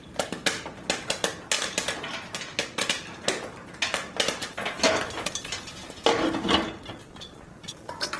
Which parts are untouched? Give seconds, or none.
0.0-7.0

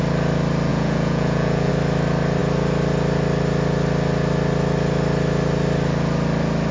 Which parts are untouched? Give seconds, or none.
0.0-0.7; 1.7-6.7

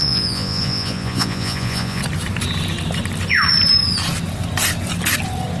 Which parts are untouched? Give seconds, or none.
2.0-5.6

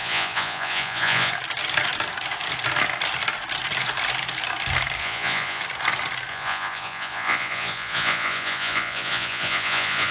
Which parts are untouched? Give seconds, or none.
1.3-5.0; 5.6-6.3